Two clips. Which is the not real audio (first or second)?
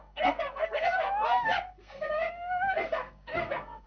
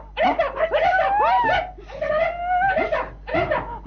first